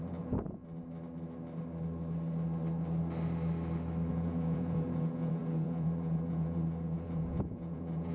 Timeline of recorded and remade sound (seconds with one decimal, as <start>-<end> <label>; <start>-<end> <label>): 0.0-0.6 remade; 0.6-4.1 recorded; 4.1-8.1 remade